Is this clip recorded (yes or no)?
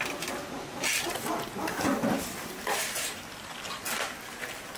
yes